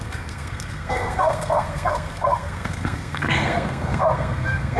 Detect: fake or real fake